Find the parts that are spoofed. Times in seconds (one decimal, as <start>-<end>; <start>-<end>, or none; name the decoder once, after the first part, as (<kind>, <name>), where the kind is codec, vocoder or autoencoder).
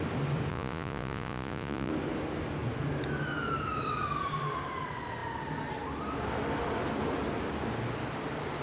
0.5-1.9 (vocoder, Vocos)